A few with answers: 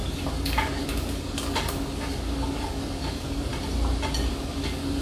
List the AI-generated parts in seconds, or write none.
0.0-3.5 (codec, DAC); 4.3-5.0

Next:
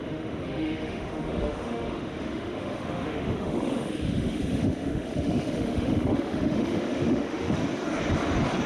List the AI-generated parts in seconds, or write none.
0.0-7.6 (autoencoder, DAC-VAE)

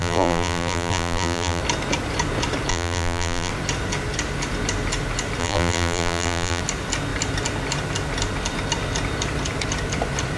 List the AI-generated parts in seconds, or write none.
0.0-1.6 (vocoder, BigVGAN v2); 2.7-3.5; 5.4-6.6

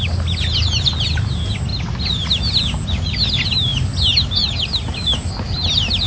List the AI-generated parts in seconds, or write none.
none

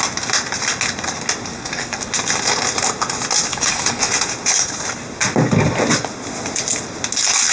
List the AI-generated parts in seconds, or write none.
1.5-2.1 (codec, DAC); 3.5-4.1

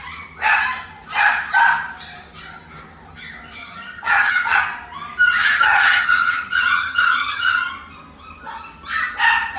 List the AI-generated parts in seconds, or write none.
3.6-4.6 (vocoder, HiFi-GAN); 5.4-7.7